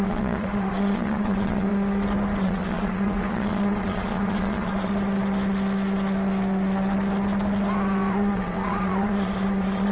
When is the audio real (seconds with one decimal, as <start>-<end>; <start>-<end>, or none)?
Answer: 1.7-2.4; 4.9-8.1